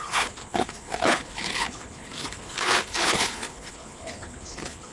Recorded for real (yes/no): no